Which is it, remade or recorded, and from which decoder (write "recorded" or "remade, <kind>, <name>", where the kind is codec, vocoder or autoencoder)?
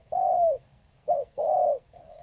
remade, codec, SNAC